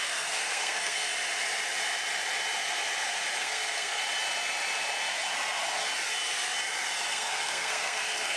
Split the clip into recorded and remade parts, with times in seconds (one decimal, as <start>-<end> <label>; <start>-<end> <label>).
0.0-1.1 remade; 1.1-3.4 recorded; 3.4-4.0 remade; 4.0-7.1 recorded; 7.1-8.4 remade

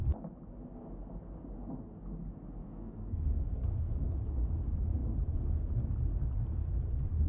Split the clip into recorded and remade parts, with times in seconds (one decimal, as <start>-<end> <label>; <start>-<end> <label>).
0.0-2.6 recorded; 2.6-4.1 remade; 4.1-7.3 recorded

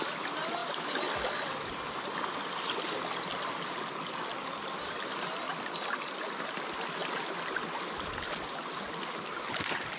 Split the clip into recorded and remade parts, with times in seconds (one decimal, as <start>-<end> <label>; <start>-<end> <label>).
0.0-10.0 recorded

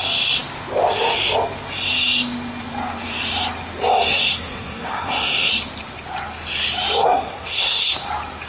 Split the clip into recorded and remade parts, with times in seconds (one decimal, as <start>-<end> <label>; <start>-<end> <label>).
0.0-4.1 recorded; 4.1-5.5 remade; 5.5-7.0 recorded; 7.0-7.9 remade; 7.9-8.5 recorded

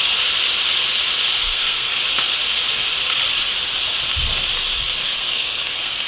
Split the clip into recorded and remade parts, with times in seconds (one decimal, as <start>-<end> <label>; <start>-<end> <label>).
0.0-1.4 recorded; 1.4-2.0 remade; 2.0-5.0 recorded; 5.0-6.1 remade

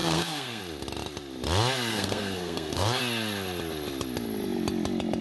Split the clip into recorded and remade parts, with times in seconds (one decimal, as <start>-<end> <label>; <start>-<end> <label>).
0.0-0.6 remade; 0.6-1.9 recorded; 1.9-3.0 remade; 3.0-5.2 recorded

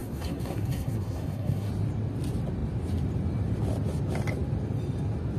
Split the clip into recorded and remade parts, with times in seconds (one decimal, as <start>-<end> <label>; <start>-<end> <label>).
0.0-1.7 remade; 1.7-5.4 recorded